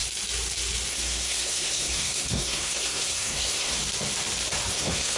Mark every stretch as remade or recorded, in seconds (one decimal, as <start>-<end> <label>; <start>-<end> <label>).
0.0-0.9 recorded; 0.9-3.8 remade; 3.8-4.7 recorded; 4.7-5.2 remade